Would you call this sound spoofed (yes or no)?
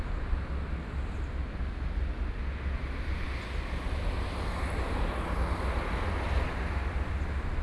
no